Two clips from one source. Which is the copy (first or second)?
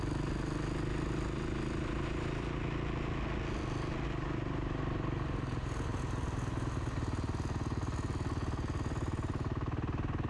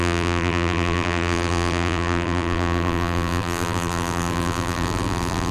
second